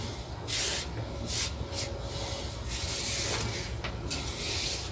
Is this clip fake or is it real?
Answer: real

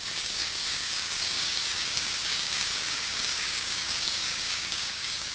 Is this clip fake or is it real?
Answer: fake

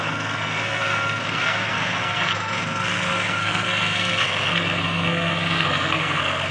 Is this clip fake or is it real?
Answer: fake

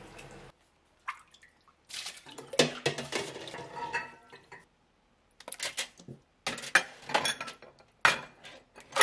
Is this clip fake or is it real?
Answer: real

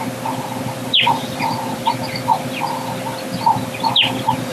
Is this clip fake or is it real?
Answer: real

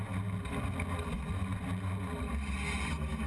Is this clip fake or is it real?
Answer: real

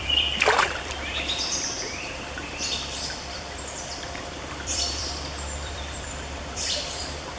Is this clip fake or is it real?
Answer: fake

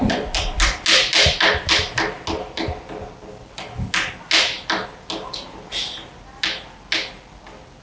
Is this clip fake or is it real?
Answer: real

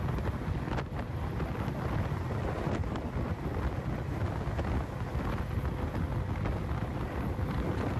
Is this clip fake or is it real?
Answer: real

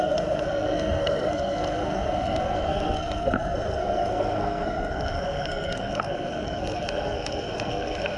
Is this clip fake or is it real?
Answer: fake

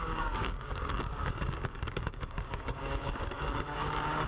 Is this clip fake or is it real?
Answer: fake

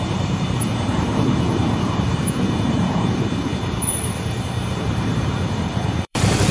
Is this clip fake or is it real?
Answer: fake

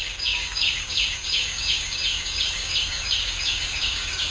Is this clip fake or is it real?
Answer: fake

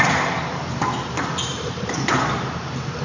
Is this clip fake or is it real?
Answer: fake